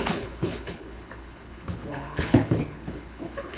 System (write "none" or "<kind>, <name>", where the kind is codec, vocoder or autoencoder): codec, HILCodec